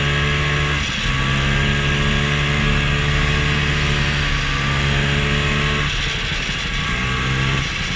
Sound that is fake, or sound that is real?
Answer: real